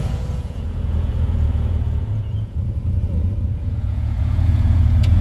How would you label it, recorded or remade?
remade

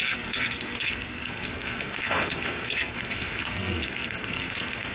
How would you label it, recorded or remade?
remade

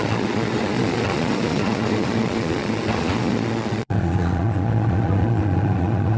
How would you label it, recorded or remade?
remade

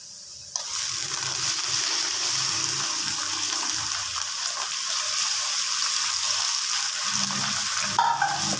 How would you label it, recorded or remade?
recorded